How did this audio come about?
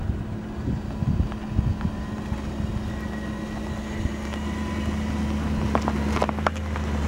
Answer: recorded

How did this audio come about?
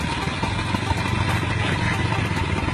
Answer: recorded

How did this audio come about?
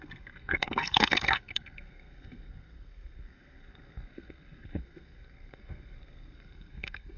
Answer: remade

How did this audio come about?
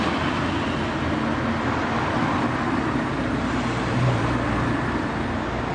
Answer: recorded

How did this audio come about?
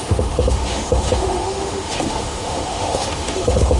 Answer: remade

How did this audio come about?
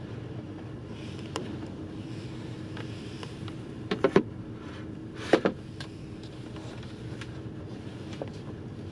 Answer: remade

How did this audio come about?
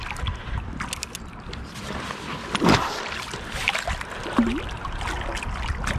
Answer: recorded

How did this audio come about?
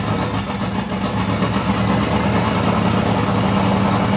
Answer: recorded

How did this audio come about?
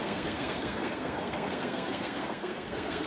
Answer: remade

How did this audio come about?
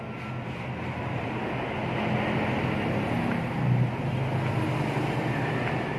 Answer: recorded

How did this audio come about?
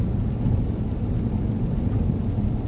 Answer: recorded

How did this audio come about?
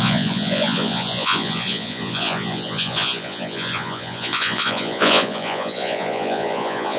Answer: remade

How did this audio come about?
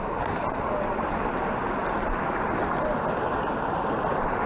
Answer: recorded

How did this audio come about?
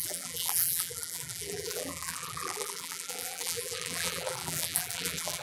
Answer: remade